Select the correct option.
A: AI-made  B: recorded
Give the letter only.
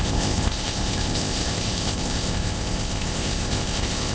A